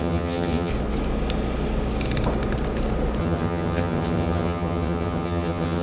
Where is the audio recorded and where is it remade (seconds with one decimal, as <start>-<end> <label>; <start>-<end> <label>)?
0.0-0.7 remade; 0.7-3.2 recorded; 3.2-5.8 remade